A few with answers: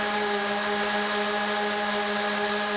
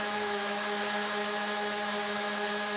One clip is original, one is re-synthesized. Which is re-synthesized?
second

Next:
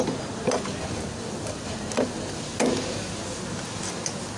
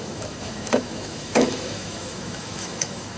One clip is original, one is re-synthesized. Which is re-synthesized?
second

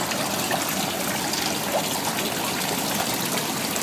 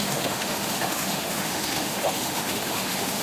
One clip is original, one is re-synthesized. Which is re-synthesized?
second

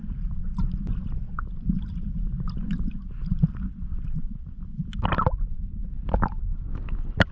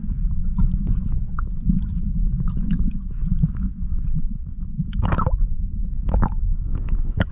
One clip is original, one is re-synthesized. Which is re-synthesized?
second